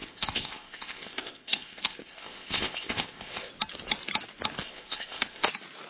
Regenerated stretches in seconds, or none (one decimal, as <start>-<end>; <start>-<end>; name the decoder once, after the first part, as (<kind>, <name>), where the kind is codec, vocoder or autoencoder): 0.0-3.5 (codec, ZipCodec); 4.6-5.5